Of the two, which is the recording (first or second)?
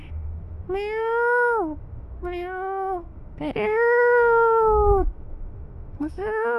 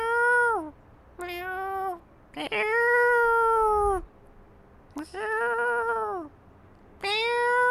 second